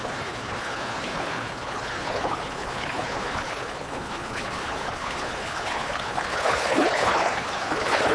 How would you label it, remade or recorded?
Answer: remade